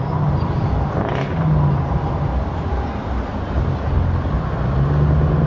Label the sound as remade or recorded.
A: recorded